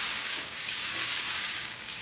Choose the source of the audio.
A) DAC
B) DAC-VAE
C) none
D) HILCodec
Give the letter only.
A